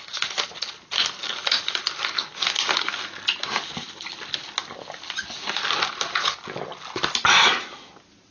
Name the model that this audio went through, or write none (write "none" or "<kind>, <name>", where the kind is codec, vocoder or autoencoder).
none